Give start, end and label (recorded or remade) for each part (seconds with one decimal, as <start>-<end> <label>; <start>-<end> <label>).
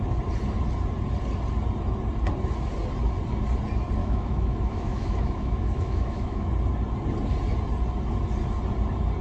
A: 0.0-4.0 recorded; 4.0-6.5 remade; 6.5-9.2 recorded